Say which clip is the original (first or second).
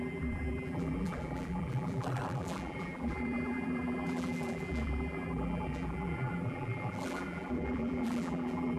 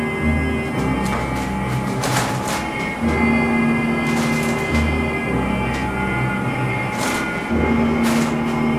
second